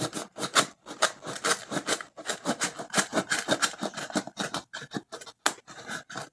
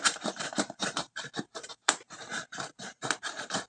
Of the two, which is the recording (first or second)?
first